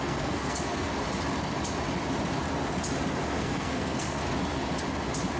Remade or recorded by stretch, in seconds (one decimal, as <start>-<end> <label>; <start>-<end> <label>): 0.0-0.9 remade; 0.9-3.4 recorded; 3.4-4.2 remade; 4.2-5.4 recorded